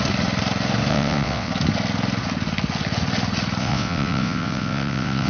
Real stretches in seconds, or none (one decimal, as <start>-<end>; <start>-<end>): 0.0-0.9; 1.5-3.6

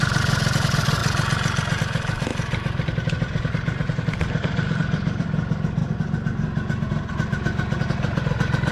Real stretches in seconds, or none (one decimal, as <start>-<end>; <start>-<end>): 1.0-1.8; 5.8-7.1

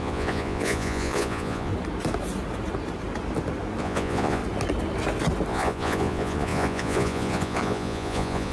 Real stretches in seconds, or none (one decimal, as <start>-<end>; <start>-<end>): 1.7-3.8; 4.4-5.5

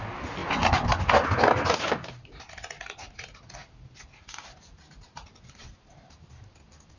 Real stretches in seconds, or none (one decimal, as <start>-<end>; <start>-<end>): 0.0-7.0

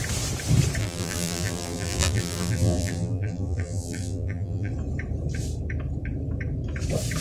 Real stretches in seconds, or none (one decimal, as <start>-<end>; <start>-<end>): 0.0-0.8; 4.7-7.2

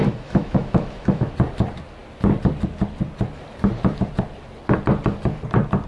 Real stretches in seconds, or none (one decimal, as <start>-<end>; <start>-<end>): 1.3-5.9